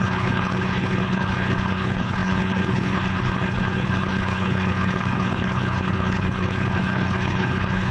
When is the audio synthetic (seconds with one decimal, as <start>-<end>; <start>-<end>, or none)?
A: 0.0-7.9

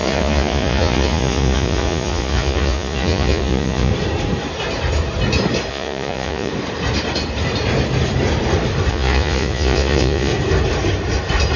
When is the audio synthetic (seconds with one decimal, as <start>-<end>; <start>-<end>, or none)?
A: 0.0-3.9; 5.7-6.5; 8.9-10.3